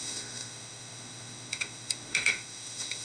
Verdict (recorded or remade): remade